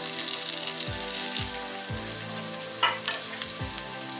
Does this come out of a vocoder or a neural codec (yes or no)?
no